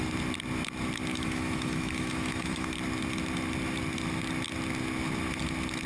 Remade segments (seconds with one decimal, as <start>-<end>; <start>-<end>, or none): 1.1-2.7